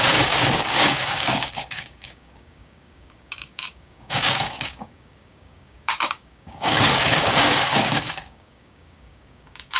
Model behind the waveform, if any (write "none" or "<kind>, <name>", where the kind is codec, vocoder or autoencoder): codec, DAC